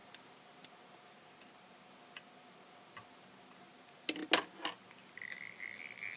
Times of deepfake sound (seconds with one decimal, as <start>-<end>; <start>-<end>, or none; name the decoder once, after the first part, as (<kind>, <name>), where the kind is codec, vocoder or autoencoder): none